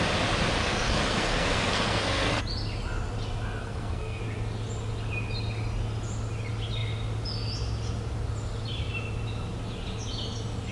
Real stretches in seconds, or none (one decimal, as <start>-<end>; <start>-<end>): 0.0-0.6; 2.4-3.6; 4.2-10.7